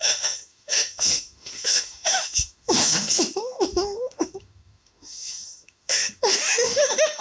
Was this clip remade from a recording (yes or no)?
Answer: yes